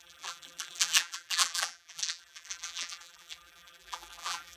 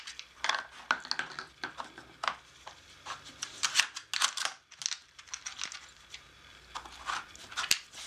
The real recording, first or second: second